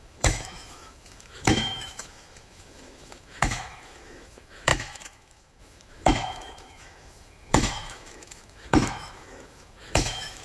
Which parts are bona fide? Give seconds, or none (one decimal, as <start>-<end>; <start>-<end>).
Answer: none